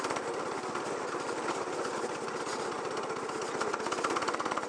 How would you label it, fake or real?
real